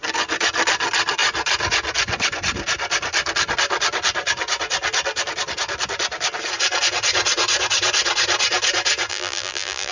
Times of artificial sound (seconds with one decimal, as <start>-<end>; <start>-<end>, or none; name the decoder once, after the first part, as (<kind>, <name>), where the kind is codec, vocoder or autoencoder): 9.1-9.9 (vocoder, BigVGAN v2)